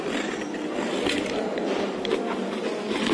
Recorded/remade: recorded